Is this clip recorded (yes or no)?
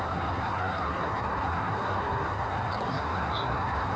no